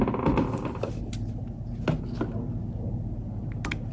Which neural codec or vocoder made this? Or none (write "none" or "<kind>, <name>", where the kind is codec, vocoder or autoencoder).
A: none